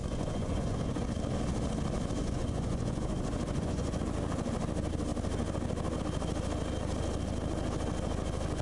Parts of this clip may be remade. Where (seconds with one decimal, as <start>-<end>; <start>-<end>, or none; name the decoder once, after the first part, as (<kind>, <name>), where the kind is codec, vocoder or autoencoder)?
0.0-1.0 (vocoder, Vocos); 2.2-4.0